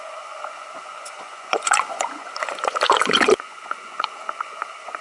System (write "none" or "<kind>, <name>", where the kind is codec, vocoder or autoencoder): vocoder, Vocos